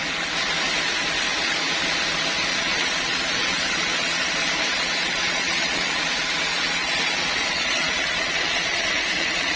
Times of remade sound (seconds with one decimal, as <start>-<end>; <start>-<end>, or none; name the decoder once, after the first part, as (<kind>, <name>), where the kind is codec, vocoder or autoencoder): 2.5-4.3 (vocoder, Vocos); 4.7-6.0; 6.5-9.6